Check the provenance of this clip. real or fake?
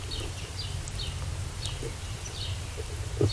fake